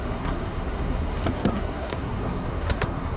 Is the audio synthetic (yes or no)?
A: yes